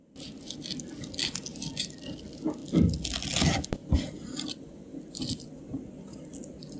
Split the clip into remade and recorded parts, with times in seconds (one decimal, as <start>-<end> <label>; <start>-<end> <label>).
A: 0.0-6.8 recorded